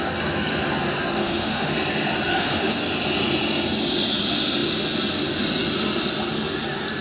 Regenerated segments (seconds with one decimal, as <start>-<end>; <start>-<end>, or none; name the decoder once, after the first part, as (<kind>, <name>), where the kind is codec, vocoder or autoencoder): 1.2-1.7 (autoencoder, DAC-VAE); 2.3-2.8